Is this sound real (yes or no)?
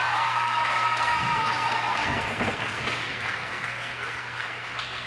no